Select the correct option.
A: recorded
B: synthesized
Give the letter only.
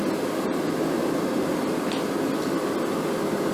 A